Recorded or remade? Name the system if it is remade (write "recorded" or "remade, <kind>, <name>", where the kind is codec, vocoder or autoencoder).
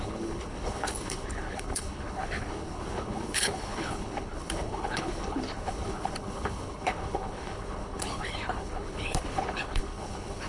remade, codec, HILCodec